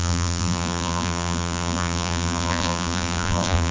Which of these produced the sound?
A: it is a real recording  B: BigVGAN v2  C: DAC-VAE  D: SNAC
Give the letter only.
B